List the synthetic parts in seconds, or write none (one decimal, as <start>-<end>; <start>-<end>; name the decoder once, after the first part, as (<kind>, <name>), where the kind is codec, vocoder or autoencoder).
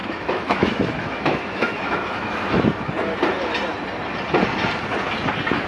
0.0-2.9 (autoencoder, DAC-VAE)